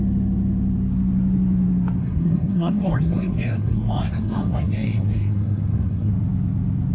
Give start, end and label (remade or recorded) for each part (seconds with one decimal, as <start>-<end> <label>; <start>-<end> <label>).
0.0-2.0 recorded; 2.0-6.1 remade; 6.1-6.9 recorded

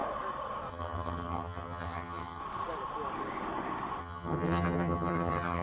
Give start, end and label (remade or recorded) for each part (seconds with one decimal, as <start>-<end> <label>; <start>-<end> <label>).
0.0-0.7 recorded; 0.7-2.4 remade; 2.4-4.0 recorded; 4.0-5.6 remade